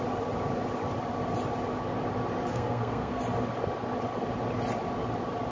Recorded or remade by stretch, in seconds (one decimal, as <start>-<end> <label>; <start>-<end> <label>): 0.0-2.5 recorded; 2.5-3.2 remade; 3.2-5.5 recorded